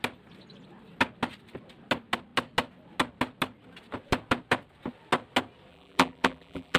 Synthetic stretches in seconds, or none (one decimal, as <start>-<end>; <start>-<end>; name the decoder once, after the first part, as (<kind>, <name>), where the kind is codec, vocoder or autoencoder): 5.7-6.8 (vocoder, BigVGAN v2)